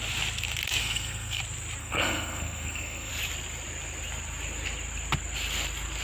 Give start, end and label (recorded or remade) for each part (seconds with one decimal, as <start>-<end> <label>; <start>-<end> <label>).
0.0-0.8 recorded; 0.8-1.4 remade; 1.4-1.8 recorded; 1.8-3.1 remade; 3.1-6.0 recorded